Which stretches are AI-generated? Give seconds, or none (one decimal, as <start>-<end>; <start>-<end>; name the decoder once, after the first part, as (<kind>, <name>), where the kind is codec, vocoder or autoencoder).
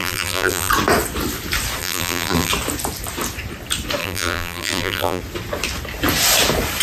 0.0-0.7 (vocoder, BigVGAN v2); 1.8-2.5; 4.0-5.2